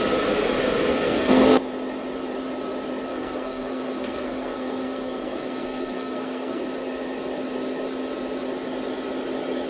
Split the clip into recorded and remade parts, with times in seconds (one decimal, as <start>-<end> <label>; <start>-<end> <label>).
0.0-0.9 recorded; 0.9-1.6 remade; 1.6-3.1 recorded; 3.1-6.6 remade; 6.6-9.7 recorded